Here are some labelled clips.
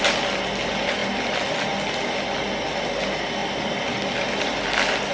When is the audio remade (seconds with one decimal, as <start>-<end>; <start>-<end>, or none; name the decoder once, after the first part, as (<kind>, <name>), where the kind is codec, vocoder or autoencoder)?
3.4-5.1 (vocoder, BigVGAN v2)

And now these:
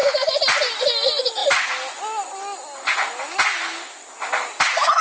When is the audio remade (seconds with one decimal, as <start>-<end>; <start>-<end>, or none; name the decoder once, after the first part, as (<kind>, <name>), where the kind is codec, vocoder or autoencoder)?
none

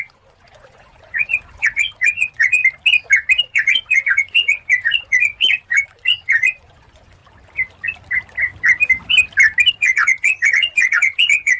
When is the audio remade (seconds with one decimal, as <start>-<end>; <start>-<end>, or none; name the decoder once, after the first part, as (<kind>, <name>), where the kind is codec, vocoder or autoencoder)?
0.0-2.6 (vocoder, Vocos); 3.4-7.2; 9.7-11.6

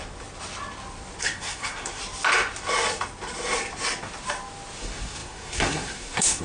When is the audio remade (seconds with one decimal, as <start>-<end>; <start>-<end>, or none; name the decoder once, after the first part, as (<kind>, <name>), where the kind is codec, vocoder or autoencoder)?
1.2-2.0 (codec, SNAC); 4.8-6.4